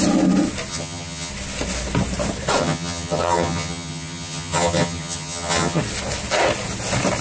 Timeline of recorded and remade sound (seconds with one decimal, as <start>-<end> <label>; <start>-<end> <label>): 0.0-0.7 recorded; 0.7-1.3 remade; 1.3-2.6 recorded; 2.6-5.8 remade; 5.8-7.2 recorded